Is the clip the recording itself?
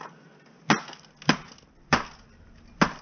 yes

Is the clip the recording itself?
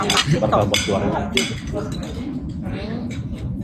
yes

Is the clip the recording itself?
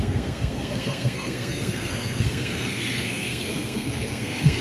no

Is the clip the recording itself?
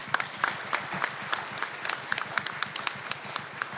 yes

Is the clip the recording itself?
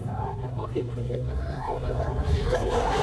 no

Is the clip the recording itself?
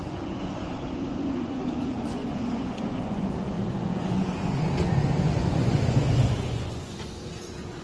no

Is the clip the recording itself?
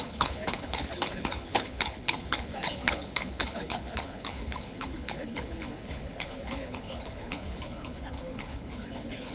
no